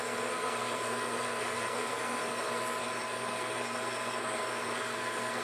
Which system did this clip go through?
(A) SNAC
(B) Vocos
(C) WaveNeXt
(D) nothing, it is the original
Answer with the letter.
A